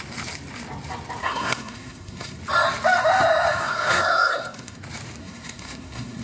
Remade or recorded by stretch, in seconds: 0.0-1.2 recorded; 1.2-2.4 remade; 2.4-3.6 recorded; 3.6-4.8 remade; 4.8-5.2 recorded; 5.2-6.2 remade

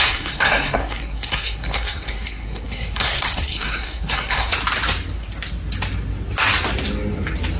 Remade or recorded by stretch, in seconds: 0.0-4.5 remade; 4.5-7.6 recorded